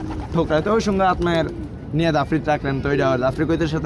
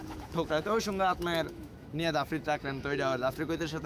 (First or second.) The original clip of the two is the first